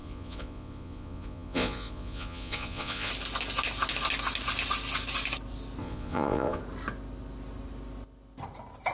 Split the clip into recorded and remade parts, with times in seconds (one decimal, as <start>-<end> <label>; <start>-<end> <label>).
0.0-3.1 remade; 3.1-5.8 recorded; 5.8-6.6 remade; 6.6-8.9 recorded